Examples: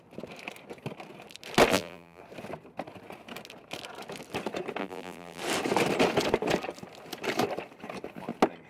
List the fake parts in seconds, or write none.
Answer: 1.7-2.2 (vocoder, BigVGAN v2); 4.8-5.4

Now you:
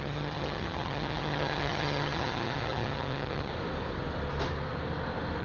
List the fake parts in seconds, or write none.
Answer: 0.0-3.5 (vocoder, HiFi-GAN)

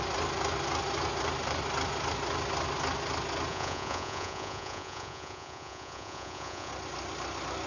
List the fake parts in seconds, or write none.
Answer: 3.5-6.7 (vocoder, Vocos)

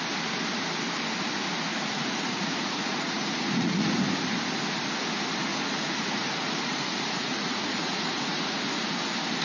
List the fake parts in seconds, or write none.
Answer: 1.7-4.0 (vocoder, Vocos); 5.5-8.8

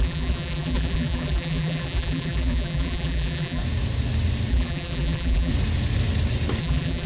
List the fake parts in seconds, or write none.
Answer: 0.0-3.6 (vocoder, BigVGAN v2); 4.5-5.5; 6.6-7.1

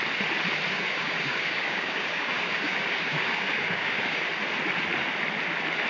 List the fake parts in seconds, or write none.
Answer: 0.7-4.2 (codec, DAC)